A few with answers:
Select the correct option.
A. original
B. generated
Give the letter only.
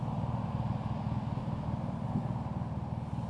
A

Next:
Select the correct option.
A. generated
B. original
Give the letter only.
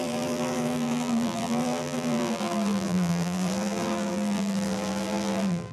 A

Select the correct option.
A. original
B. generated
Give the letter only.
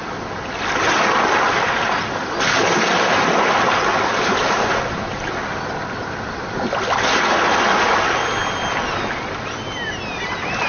A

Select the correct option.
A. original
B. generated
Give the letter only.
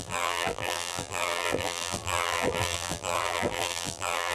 B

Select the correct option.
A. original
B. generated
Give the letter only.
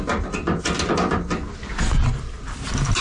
A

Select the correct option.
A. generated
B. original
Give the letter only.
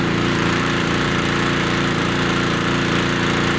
A